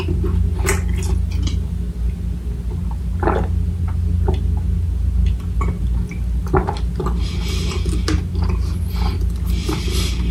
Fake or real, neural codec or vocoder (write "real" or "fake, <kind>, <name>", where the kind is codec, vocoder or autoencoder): real